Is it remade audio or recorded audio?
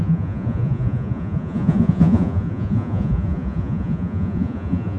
remade